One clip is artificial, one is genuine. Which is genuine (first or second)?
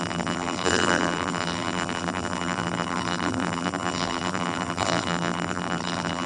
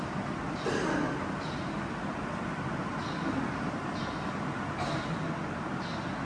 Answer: second